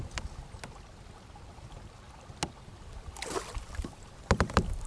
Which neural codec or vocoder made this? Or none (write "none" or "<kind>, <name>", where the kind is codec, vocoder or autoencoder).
none